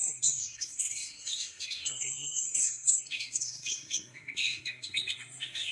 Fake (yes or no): yes